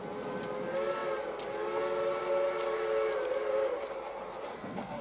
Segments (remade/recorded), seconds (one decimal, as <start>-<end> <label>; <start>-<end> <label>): 0.0-4.5 recorded; 4.5-5.0 remade